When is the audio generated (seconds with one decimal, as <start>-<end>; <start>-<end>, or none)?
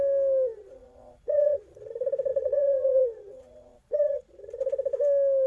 0.6-1.9; 2.3-4.6